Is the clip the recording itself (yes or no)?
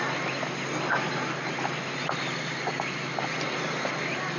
yes